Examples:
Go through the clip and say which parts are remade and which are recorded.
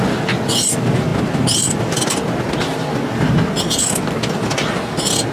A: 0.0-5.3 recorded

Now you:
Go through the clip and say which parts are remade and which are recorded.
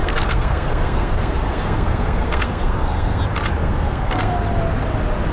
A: 0.0-3.2 remade; 3.2-3.6 recorded; 3.6-4.3 remade; 4.3-5.3 recorded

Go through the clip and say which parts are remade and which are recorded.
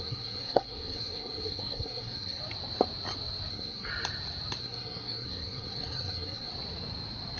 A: 0.0-2.4 remade; 2.4-3.5 recorded; 3.5-3.9 remade; 3.9-4.6 recorded; 4.6-6.5 remade; 6.5-7.4 recorded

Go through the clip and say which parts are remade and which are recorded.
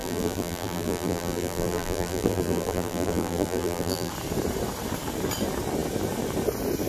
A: 0.0-4.1 remade; 4.1-6.9 recorded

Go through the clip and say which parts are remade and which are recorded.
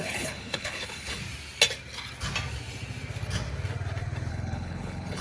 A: 0.0-1.2 remade; 1.2-4.3 recorded; 4.3-5.2 remade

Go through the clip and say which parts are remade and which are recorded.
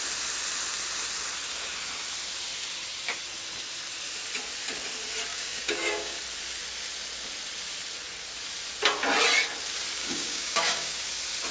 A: 0.0-5.3 recorded; 5.3-6.2 remade; 6.2-10.0 recorded; 10.0-11.0 remade; 11.0-11.5 recorded